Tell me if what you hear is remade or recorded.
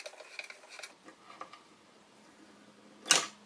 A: recorded